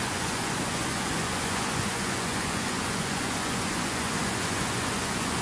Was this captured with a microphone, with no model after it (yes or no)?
no